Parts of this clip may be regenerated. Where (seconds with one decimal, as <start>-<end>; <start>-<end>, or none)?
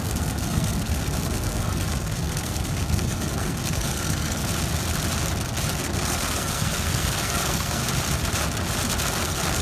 0.0-4.4; 5.8-7.8; 9.2-9.6